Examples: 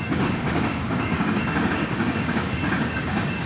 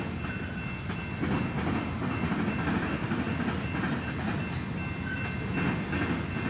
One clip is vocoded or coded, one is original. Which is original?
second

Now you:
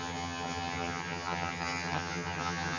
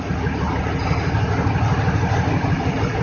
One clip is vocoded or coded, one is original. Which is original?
second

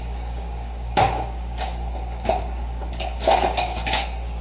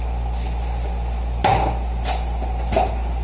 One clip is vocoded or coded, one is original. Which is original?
second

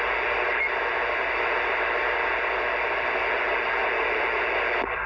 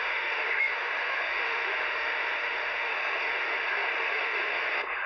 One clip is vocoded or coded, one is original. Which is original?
first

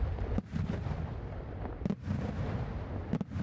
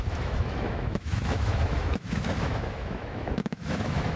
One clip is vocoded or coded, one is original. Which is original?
first